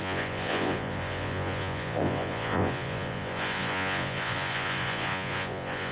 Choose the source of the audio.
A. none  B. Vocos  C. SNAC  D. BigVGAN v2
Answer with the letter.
B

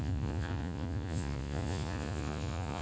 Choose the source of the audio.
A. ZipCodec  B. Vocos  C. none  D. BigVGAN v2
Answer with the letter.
B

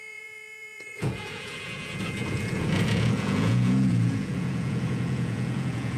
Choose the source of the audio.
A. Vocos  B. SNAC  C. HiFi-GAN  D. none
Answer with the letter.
A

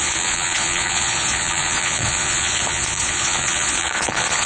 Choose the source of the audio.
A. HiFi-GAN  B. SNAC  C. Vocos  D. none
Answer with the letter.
C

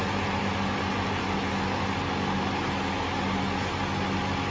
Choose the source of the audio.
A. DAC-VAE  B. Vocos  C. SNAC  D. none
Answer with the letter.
D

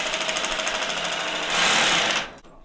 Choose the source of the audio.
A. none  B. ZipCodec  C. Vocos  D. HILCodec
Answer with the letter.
A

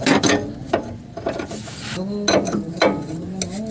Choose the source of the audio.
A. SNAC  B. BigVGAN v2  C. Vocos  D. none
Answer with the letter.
D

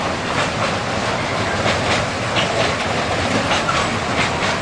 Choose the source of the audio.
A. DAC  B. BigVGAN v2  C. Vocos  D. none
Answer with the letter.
D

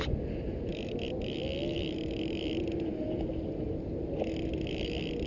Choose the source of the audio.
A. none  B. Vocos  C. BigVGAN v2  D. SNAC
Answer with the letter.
A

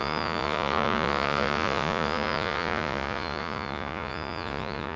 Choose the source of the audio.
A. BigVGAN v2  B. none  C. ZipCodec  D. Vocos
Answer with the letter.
D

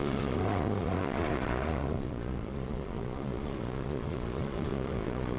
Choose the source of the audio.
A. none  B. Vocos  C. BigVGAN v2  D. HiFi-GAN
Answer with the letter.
B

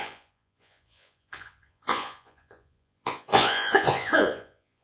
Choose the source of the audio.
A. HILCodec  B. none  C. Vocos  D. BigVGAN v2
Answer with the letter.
C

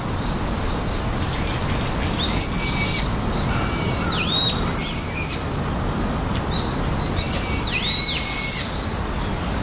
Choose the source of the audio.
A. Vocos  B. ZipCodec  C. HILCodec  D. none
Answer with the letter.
D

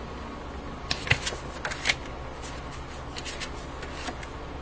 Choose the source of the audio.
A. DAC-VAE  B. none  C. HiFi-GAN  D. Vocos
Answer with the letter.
B